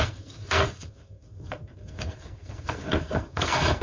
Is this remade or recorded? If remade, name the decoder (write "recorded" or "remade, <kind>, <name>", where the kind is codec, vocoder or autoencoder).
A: remade, codec, SNAC